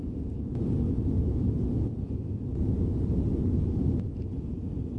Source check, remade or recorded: recorded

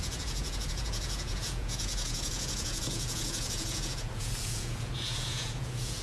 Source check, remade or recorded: remade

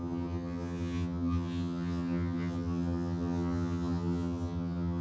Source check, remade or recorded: remade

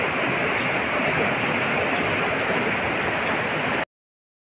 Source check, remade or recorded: recorded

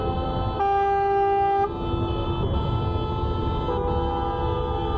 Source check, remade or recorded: recorded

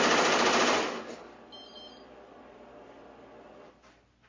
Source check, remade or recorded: recorded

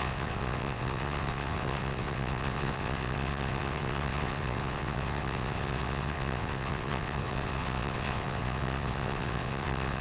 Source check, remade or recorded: remade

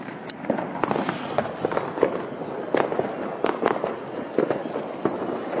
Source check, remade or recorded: recorded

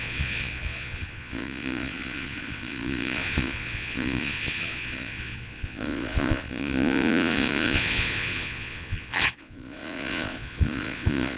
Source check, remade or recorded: remade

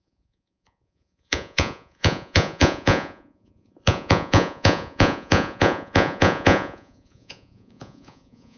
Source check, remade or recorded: remade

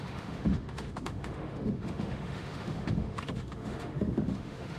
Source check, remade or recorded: remade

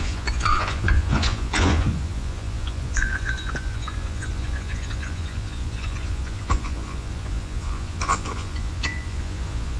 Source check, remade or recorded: remade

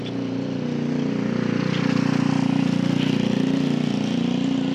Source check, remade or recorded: recorded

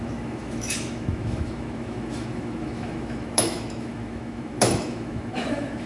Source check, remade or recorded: remade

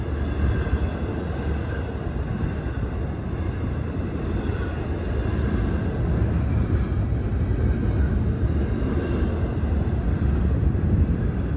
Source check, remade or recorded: recorded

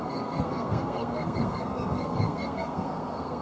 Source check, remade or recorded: remade